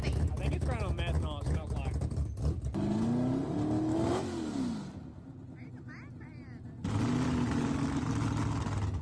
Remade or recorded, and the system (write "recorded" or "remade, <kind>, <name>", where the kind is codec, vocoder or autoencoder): recorded